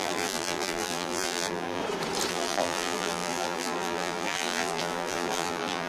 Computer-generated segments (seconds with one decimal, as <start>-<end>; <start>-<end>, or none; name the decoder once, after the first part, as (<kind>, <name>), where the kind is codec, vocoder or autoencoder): 0.0-1.8 (vocoder, BigVGAN v2); 2.3-5.9